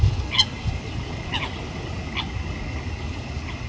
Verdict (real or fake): real